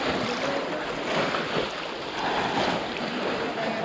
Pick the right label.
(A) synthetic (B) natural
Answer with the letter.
B